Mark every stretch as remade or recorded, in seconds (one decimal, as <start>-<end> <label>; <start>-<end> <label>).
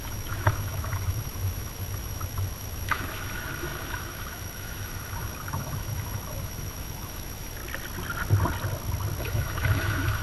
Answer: 0.0-7.6 remade; 7.6-9.2 recorded; 9.2-10.2 remade